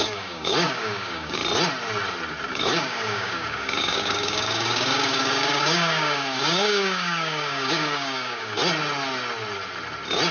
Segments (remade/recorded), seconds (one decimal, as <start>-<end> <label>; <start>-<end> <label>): 0.0-1.4 remade; 1.4-2.5 recorded; 2.5-8.6 remade; 8.6-10.3 recorded